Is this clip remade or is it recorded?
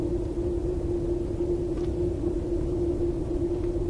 recorded